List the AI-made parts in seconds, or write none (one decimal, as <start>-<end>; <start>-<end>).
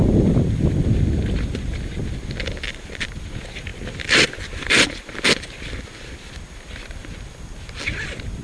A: none